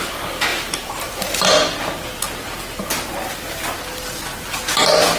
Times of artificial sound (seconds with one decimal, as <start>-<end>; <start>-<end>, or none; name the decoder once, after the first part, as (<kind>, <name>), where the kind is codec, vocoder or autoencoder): 0.5-1.1 (vocoder, BigVGAN v2)